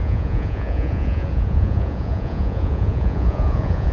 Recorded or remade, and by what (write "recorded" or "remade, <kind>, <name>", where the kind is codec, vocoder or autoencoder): remade, vocoder, Vocos